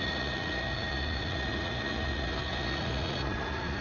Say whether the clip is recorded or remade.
remade